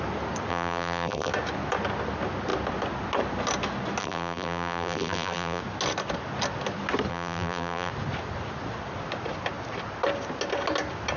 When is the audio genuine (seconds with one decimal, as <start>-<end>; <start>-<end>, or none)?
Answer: 0.0-0.5; 1.3-4.0; 5.6-7.1; 7.9-11.2